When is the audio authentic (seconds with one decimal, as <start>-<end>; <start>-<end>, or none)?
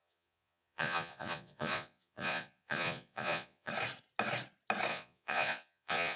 3.7-4.9